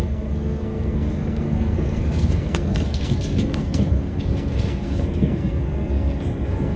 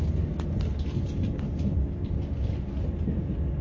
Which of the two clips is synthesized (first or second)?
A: first